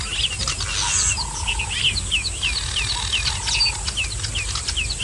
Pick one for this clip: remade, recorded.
recorded